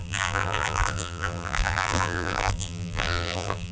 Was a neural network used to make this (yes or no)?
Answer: yes